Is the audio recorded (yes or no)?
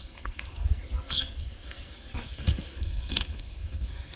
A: no